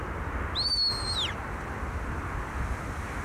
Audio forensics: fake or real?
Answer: real